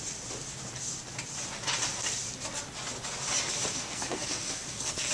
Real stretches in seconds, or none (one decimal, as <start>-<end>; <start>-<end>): 0.0-3.7